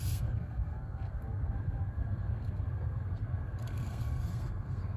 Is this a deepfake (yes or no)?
yes